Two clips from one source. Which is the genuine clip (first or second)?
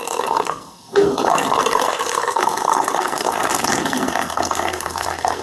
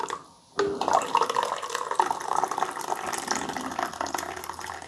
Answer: second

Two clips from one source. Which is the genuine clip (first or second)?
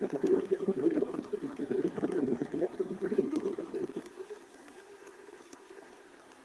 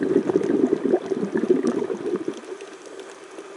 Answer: second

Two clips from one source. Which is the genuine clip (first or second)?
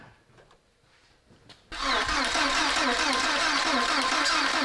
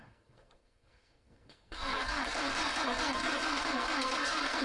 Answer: first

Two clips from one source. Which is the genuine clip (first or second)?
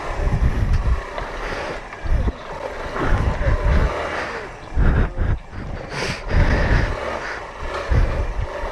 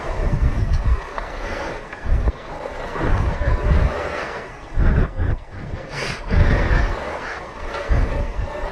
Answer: first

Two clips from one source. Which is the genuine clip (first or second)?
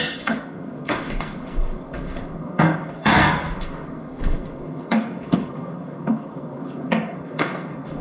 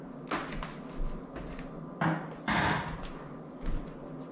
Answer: second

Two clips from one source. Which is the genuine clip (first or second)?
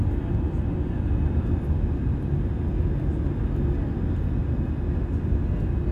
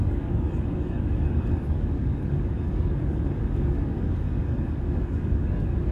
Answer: first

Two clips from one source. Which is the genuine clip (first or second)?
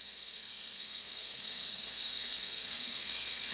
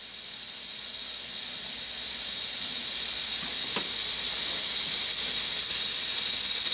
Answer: second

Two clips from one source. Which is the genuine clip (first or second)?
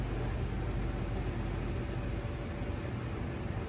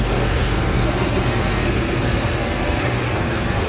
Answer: first